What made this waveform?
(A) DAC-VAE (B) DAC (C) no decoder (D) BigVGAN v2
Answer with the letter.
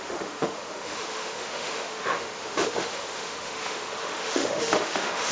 A